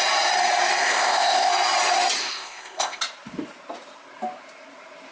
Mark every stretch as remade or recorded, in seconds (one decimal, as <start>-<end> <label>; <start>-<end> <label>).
0.0-0.8 recorded; 0.8-1.5 remade; 1.5-2.2 recorded; 2.2-3.0 remade; 3.0-5.1 recorded